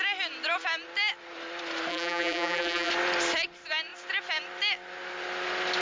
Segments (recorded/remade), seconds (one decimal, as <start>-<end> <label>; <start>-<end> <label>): 0.0-1.9 recorded; 1.9-2.9 remade; 2.9-5.8 recorded